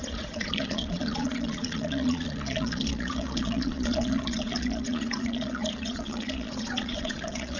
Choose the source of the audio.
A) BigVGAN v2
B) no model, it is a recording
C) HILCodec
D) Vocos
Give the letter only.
D